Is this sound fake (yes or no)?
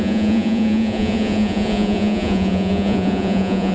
yes